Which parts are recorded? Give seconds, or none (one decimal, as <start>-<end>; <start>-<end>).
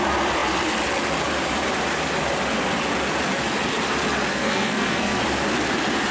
0.0-4.3; 5.2-6.1